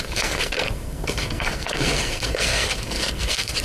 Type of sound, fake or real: fake